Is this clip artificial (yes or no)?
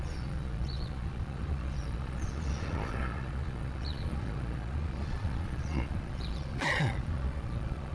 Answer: yes